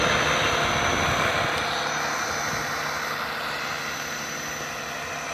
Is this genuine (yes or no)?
yes